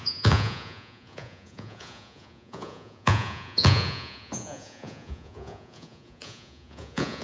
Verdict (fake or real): fake